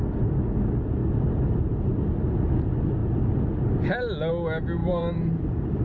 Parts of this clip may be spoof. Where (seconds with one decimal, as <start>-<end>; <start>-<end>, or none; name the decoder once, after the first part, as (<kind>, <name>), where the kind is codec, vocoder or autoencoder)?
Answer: 1.0-1.8 (vocoder, BigVGAN v2); 4.8-5.8